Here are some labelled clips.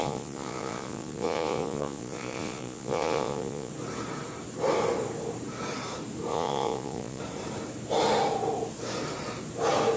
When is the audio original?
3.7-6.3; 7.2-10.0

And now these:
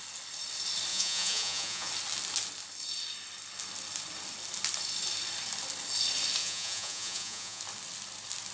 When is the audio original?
0.0-0.9; 1.9-6.4; 7.6-8.5

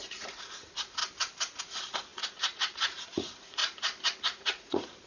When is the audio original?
1.0-1.6; 3.6-4.2

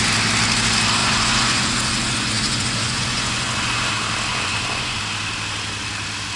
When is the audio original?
0.0-1.0; 3.9-4.3; 5.0-6.4

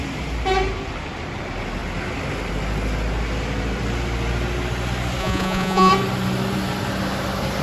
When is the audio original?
0.0-5.2; 5.9-7.6

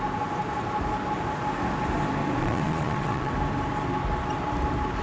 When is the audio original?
0.0-2.4; 3.3-5.0

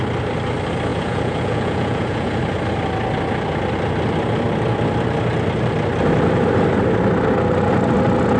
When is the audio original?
0.0-0.9; 2.4-8.4

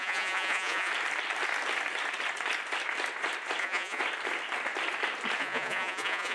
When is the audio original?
0.9-3.6; 4.0-5.4